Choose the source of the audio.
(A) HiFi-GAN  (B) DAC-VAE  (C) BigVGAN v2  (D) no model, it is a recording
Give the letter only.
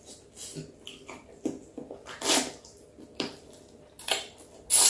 D